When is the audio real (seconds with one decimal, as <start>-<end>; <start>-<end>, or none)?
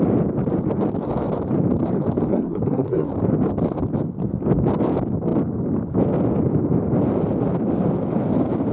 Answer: 0.0-2.3; 3.1-8.7